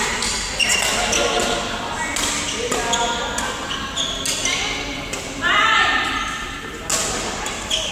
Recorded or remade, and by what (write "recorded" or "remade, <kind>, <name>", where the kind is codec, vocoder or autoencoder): recorded